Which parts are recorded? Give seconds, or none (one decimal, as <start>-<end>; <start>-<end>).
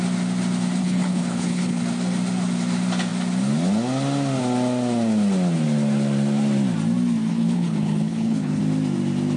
0.0-0.8; 1.8-7.3; 8.6-9.4